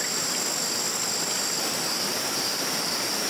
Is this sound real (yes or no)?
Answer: yes